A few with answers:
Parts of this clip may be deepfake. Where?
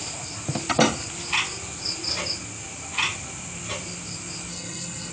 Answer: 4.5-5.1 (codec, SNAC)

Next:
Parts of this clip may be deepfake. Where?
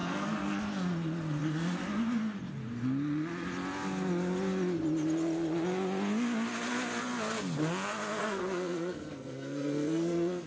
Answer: 0.0-0.6 (codec, SNAC); 8.2-10.5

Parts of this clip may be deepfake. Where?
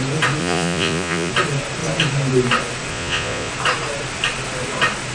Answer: 0.4-1.3 (vocoder, Vocos); 2.9-3.5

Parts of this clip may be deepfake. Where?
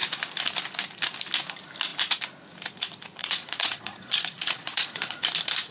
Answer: 3.2-5.2 (vocoder, Vocos)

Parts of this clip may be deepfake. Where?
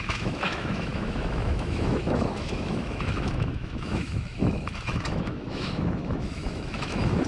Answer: 0.0-7.3 (autoencoder, DAC-VAE)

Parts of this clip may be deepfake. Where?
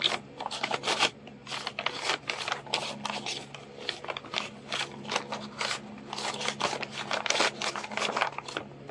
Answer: none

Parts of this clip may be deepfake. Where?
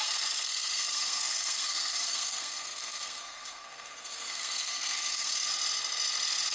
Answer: 0.0-5.5 (codec, SNAC)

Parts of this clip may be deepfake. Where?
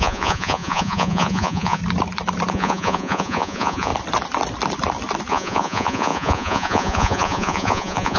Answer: 0.0-1.8 (vocoder, Vocos); 2.5-3.9; 5.3-8.2